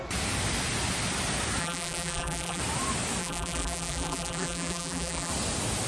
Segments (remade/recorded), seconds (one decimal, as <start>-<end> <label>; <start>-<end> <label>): 0.0-1.6 recorded; 1.6-2.6 remade; 2.6-3.2 recorded; 3.2-5.3 remade; 5.3-5.9 recorded